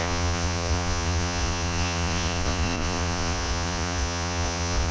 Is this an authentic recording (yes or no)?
no